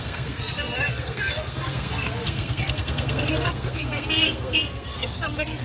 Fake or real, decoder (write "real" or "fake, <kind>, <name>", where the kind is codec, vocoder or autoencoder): fake, codec, SNAC